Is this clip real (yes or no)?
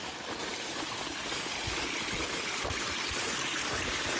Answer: yes